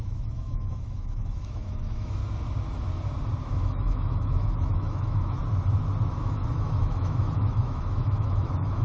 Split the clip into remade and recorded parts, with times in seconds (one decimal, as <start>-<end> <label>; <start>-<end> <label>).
0.0-2.2 remade; 2.2-3.4 recorded; 3.4-5.4 remade; 5.4-6.1 recorded; 6.1-8.8 remade